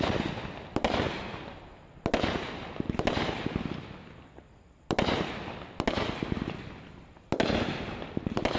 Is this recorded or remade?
recorded